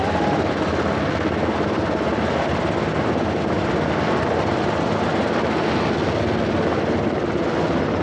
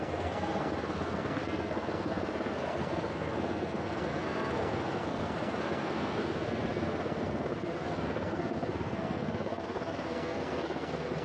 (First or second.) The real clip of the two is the first